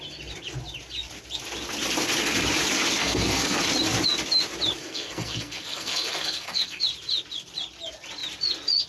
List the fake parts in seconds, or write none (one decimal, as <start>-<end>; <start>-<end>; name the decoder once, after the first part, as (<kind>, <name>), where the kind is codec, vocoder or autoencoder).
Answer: 3.0-3.6 (codec, SNAC); 4.8-6.8